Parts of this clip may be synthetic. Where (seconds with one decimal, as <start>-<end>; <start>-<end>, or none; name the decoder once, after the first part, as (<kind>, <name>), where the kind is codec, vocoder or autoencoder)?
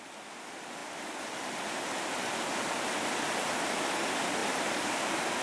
none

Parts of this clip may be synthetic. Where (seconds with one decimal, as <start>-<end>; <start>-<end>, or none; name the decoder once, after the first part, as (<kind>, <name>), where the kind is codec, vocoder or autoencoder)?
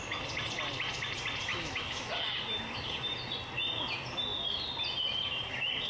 1.5-2.1 (autoencoder, DAC-VAE)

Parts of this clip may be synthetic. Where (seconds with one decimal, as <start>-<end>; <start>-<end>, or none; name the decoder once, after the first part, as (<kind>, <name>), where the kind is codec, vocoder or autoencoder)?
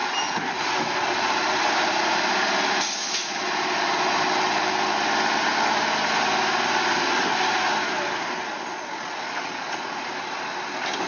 none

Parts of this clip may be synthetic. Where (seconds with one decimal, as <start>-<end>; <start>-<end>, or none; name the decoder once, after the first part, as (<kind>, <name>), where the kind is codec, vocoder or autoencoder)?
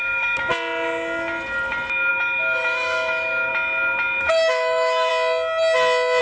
0.0-0.5 (autoencoder, DAC-VAE); 2.1-3.5; 4.2-5.1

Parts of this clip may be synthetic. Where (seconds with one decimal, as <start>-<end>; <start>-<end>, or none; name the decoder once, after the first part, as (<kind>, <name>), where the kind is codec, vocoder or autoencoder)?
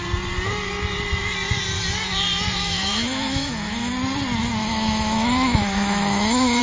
2.6-3.9 (autoencoder, DAC-VAE); 4.6-6.6